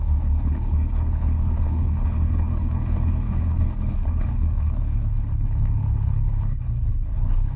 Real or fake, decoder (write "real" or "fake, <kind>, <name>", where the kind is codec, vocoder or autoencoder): fake, codec, HILCodec